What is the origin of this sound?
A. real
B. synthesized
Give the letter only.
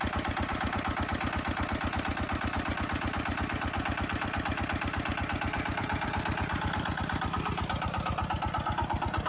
B